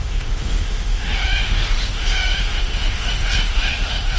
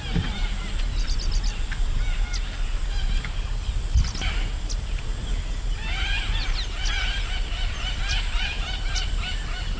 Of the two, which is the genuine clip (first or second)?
second